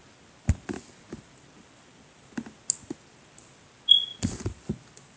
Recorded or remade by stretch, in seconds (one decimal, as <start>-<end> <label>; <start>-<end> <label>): 0.0-5.2 recorded